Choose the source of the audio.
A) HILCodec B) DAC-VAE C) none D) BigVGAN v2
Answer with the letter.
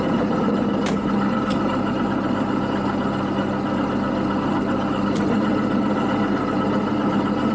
C